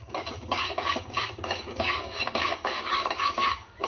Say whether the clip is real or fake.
fake